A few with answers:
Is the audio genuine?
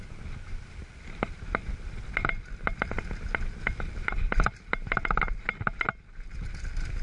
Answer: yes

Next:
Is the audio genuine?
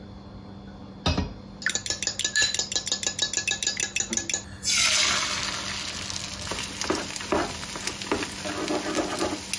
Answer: yes